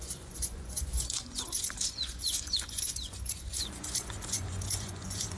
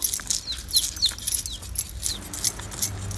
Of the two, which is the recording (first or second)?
second